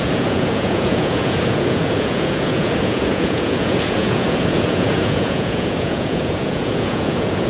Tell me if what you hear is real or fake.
fake